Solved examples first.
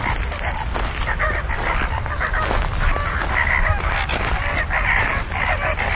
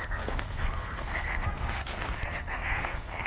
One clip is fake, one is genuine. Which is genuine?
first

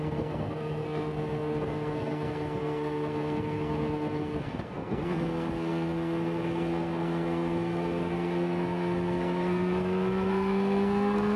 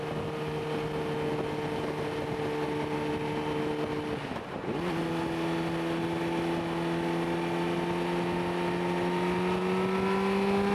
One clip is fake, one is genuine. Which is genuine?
second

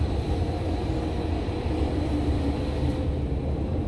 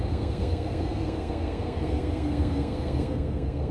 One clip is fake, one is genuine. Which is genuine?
first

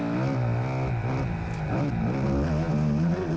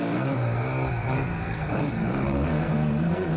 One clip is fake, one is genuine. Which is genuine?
first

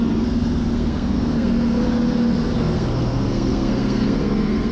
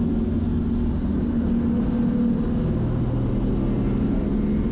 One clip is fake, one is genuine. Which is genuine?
second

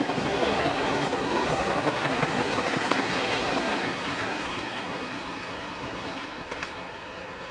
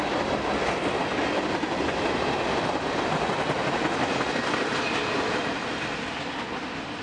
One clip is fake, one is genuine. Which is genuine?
second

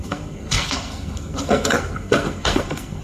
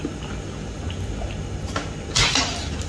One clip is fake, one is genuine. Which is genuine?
second